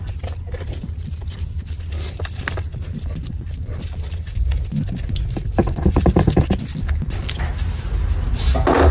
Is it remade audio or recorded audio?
recorded